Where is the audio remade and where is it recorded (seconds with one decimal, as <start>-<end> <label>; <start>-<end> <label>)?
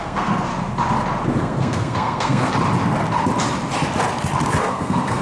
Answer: 0.0-0.5 remade; 0.5-1.4 recorded; 1.4-2.5 remade; 2.5-4.6 recorded; 4.6-5.2 remade